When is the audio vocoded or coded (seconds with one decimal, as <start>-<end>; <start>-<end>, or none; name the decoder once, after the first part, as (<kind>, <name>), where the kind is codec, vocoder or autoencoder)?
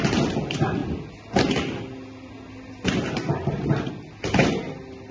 none